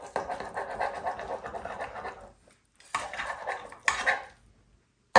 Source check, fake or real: real